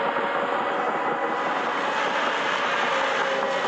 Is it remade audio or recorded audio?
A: recorded